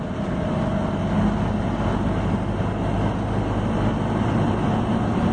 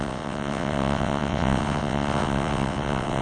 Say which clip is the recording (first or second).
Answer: first